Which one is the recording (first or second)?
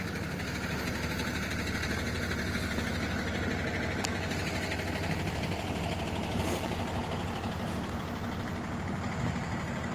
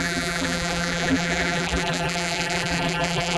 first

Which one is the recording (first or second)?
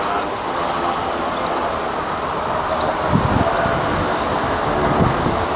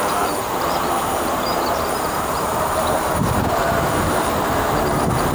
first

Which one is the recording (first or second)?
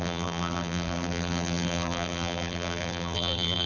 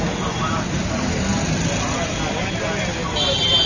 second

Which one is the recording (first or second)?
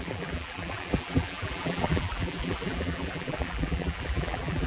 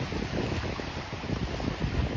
second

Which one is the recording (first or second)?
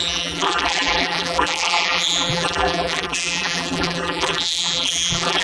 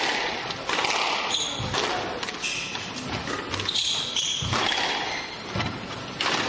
second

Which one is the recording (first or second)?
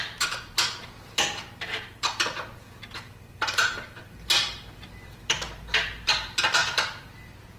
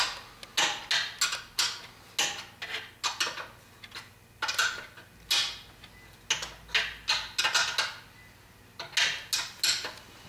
second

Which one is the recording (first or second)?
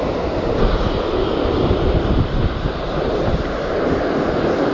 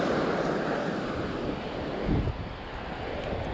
second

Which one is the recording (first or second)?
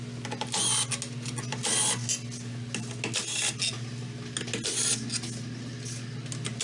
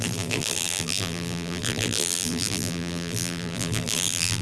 first